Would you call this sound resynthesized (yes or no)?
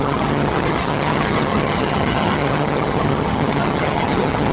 yes